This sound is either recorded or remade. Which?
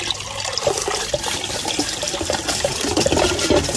recorded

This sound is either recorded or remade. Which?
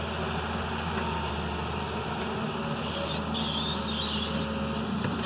recorded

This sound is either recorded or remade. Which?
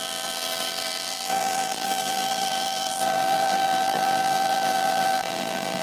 remade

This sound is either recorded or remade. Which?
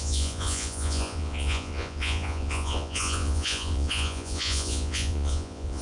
remade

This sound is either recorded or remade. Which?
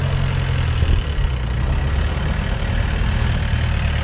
recorded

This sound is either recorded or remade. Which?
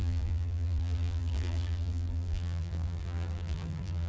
remade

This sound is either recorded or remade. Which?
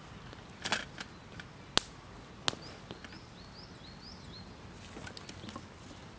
recorded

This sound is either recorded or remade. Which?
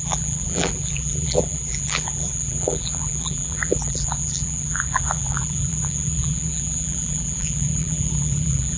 remade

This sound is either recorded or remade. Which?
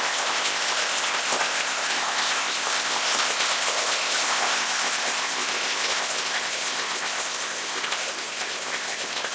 remade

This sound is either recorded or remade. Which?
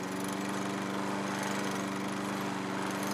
recorded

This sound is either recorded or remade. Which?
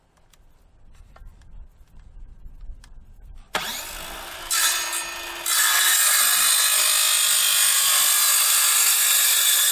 recorded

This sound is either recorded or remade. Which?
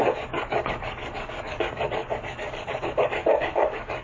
remade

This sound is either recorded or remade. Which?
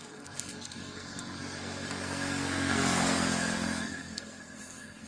remade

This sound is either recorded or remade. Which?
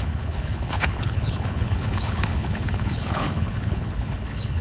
remade